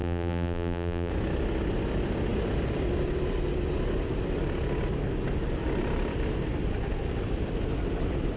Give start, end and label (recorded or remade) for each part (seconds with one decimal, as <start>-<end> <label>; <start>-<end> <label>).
0.0-1.1 remade; 1.1-8.4 recorded